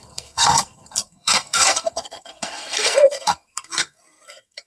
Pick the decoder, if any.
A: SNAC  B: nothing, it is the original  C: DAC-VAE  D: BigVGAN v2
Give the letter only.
A